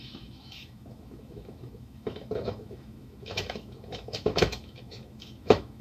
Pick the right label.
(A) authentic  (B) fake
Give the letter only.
B